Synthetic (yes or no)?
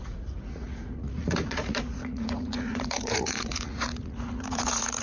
yes